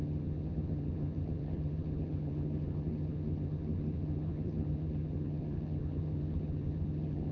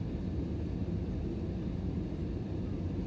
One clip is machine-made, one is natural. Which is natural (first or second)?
second